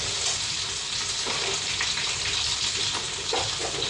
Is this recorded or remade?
recorded